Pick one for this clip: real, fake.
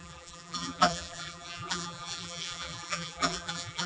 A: fake